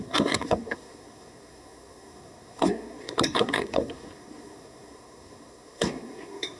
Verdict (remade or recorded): remade